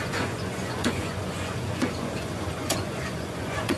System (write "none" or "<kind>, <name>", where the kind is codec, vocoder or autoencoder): vocoder, Vocos